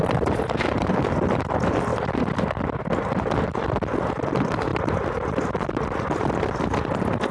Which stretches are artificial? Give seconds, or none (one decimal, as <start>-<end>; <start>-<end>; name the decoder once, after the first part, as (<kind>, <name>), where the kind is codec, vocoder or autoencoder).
none

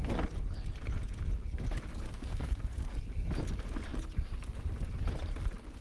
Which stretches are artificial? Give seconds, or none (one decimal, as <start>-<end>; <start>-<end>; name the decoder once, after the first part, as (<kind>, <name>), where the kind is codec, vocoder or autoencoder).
1.9-2.9 (codec, SNAC)

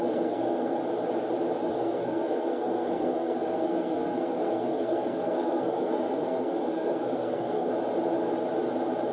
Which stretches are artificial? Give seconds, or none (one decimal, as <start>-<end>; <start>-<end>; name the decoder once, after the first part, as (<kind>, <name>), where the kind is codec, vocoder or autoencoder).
0.0-0.8 (codec, SNAC); 1.7-7.7

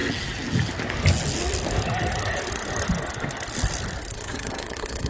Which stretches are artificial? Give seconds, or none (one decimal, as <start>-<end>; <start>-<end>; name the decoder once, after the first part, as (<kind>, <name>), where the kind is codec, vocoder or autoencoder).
4.1-5.1 (codec, SNAC)